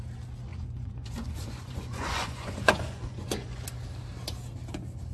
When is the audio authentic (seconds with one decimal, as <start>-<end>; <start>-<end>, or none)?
0.0-0.5; 3.6-5.1